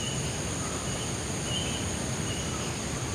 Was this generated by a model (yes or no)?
no